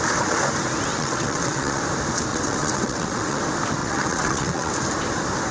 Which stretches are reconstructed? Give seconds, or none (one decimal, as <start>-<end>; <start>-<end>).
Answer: 0.9-1.8; 2.3-3.4; 3.8-4.7